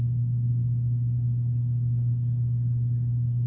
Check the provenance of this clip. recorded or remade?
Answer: recorded